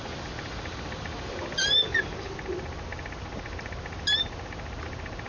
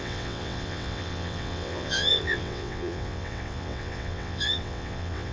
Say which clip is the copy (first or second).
second